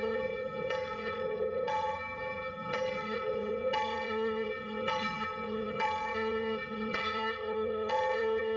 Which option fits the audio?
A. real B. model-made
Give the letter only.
B